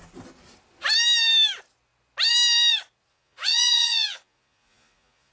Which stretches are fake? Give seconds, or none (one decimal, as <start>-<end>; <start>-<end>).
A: 3.1-5.3